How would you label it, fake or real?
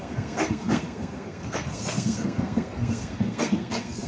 fake